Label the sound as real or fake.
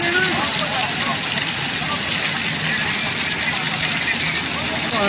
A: real